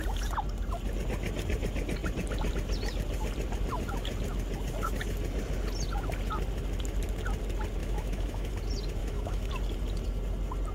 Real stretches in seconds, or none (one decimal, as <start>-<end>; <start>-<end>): 0.0-7.8; 8.5-9.0; 9.5-10.7